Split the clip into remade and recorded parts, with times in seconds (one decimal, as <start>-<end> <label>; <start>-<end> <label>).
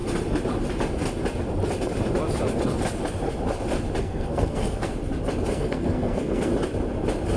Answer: 0.0-4.0 recorded; 4.0-4.9 remade; 4.9-5.5 recorded; 5.5-6.5 remade; 6.5-7.4 recorded